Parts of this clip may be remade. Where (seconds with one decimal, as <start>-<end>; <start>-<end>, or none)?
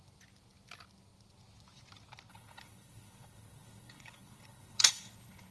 2.3-5.5